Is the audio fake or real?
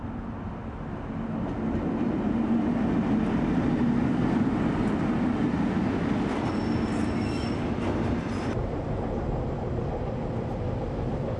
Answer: real